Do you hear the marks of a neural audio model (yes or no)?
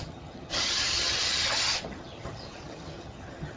yes